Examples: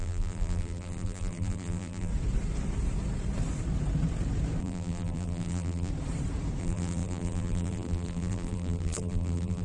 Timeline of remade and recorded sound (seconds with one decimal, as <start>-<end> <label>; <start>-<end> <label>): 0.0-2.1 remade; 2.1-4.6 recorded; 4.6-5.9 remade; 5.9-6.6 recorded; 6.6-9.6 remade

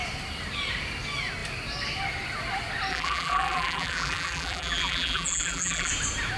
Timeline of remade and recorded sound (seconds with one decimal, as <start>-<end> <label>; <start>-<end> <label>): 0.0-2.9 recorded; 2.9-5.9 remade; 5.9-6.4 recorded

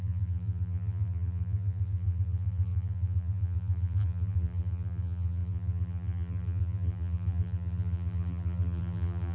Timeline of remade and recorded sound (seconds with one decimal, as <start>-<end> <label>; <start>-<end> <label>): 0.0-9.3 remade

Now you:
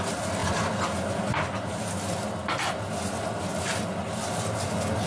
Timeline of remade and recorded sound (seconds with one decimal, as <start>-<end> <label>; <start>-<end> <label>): 0.0-5.1 recorded

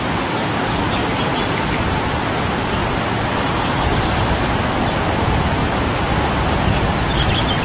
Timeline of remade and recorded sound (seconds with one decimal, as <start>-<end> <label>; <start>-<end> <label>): 0.0-2.8 remade; 2.8-3.4 recorded; 3.4-7.6 remade

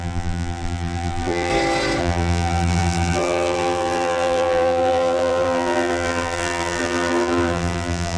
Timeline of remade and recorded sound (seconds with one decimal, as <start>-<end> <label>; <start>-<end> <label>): 0.0-1.5 remade; 1.5-2.0 recorded; 2.0-8.2 remade

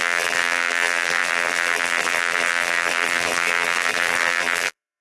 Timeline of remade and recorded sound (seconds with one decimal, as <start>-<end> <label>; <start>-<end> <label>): 0.0-5.0 remade